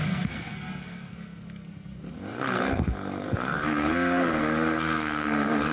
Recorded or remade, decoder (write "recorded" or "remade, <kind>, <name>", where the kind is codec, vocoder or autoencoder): remade, codec, SNAC